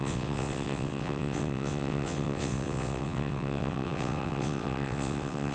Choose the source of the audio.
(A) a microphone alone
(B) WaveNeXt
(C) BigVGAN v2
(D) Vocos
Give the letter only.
B